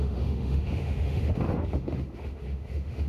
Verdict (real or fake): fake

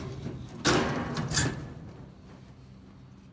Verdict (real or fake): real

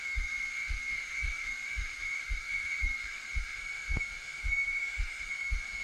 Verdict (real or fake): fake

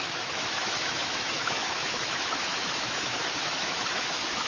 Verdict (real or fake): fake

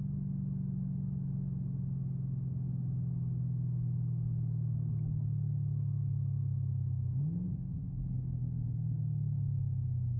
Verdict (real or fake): real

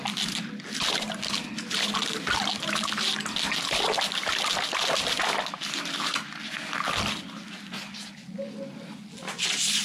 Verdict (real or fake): real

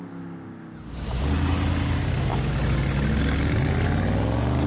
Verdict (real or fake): real